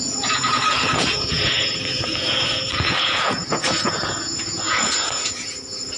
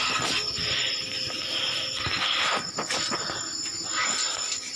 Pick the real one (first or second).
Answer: second